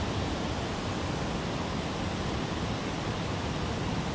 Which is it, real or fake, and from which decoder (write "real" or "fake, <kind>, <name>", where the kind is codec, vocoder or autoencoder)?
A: real